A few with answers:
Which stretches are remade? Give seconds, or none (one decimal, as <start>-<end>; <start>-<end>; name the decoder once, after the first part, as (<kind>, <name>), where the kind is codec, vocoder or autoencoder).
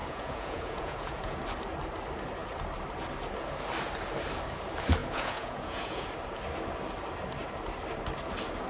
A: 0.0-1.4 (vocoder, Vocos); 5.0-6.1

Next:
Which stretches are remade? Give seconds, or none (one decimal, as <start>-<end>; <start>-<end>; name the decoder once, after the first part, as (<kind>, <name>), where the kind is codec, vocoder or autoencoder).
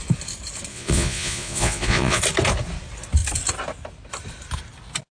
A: 0.7-2.2 (vocoder, Vocos)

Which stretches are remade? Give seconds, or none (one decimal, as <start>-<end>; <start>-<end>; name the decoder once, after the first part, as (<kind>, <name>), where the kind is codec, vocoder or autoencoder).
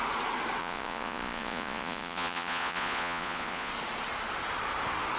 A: 0.6-3.7 (vocoder, Vocos)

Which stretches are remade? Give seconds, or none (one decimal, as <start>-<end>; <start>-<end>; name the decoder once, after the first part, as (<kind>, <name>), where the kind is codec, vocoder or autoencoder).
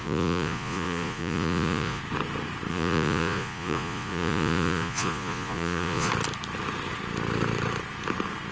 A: 0.0-2.0 (vocoder, Vocos); 2.7-6.1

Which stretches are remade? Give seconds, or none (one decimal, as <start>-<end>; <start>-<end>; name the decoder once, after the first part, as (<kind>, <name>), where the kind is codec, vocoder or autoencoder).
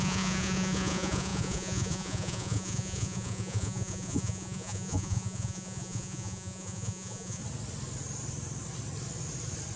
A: 0.0-7.4 (vocoder, Vocos)